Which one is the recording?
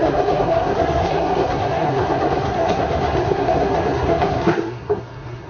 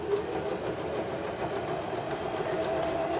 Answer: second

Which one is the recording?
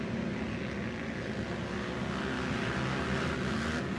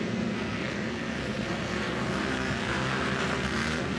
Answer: first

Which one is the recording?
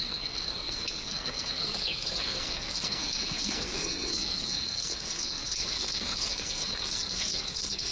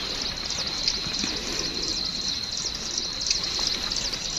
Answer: second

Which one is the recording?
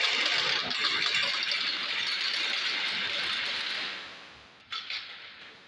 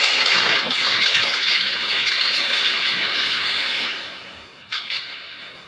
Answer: first